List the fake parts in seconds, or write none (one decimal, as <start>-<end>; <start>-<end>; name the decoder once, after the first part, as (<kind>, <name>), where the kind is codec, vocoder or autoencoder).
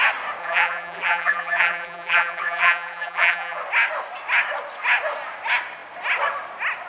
0.4-3.6 (vocoder, BigVGAN v2)